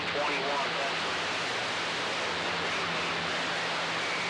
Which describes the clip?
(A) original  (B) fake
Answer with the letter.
A